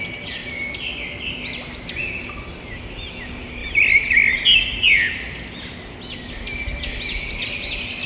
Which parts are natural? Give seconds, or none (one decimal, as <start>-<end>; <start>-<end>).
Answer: 0.0-8.1